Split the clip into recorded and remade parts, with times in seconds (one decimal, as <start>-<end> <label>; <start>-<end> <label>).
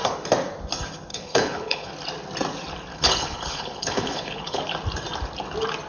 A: 0.0-1.1 recorded; 1.1-1.9 remade; 1.9-2.9 recorded; 2.9-4.6 remade; 4.6-5.9 recorded